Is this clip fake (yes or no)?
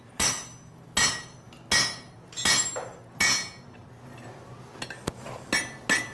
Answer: no